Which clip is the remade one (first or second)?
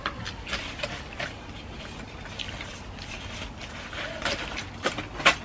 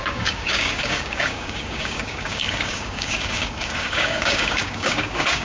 second